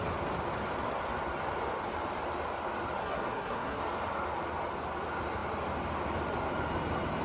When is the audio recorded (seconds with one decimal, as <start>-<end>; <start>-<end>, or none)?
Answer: 0.0-3.0; 3.8-7.2